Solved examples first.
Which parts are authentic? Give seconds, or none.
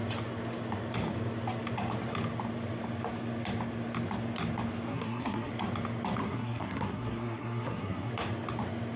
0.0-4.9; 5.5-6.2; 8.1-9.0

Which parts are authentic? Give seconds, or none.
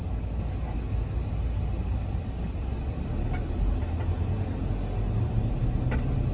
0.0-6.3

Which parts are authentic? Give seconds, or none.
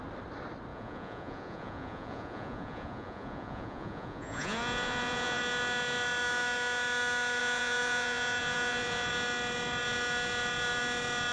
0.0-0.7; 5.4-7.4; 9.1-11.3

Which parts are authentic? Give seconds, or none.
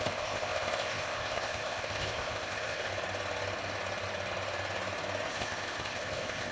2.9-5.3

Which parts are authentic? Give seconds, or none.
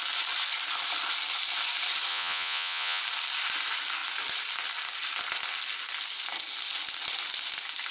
0.0-2.1; 3.0-7.9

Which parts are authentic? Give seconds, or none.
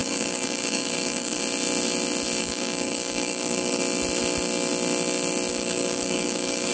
1.4-2.4; 3.8-5.5